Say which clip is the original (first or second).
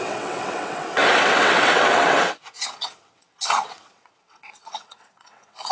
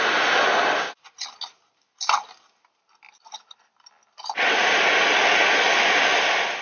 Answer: second